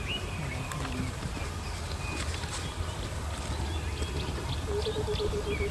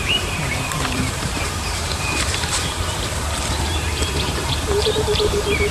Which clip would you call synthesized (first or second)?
second